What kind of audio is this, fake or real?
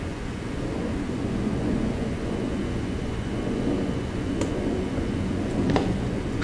fake